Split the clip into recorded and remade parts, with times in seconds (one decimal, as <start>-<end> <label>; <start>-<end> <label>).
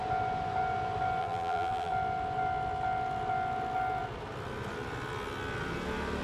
0.0-1.2 recorded; 1.2-1.9 remade; 1.9-6.2 recorded